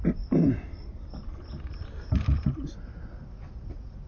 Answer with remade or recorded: recorded